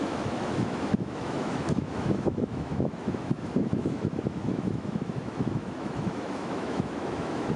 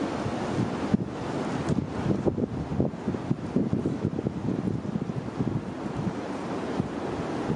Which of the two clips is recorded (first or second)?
second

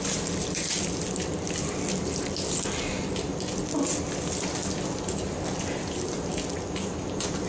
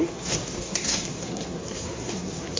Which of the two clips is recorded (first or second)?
first